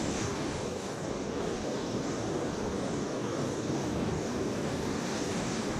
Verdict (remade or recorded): remade